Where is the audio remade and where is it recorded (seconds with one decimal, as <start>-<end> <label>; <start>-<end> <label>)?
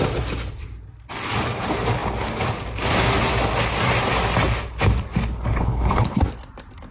0.0-5.5 recorded; 5.5-6.2 remade; 6.2-6.9 recorded